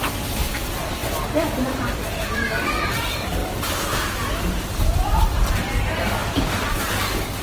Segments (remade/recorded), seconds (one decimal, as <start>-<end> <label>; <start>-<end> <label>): 0.0-3.4 remade; 3.4-4.4 recorded; 4.4-7.4 remade